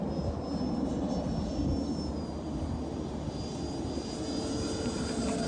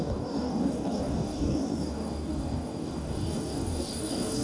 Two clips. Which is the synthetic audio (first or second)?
second